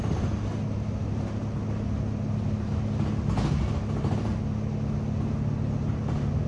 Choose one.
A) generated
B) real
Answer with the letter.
B